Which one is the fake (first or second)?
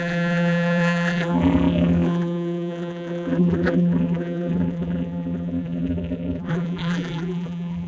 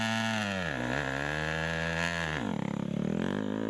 first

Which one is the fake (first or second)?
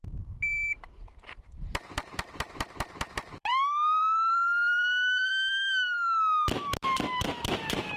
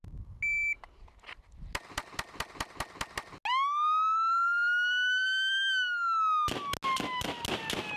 first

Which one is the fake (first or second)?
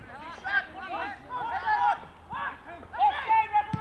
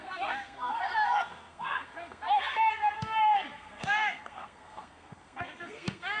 second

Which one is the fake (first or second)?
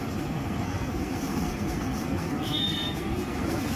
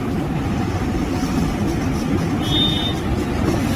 first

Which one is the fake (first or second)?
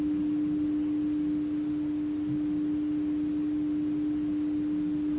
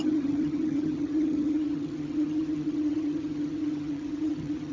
second